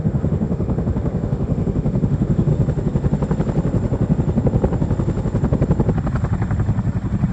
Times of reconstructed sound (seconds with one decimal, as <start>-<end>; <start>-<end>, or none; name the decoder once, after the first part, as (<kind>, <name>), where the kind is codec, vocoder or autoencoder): 0.0-2.5 (autoencoder, DAC-VAE)